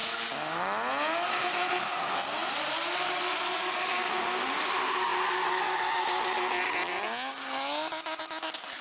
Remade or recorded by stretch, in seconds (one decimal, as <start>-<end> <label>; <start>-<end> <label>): 0.0-8.8 recorded